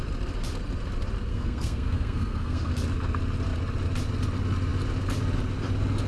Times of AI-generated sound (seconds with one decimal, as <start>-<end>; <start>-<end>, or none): 1.3-2.7